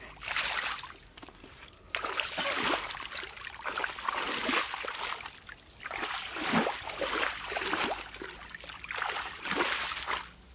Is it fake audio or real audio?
real